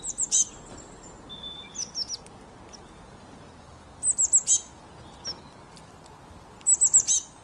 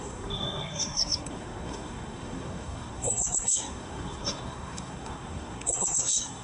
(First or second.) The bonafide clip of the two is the first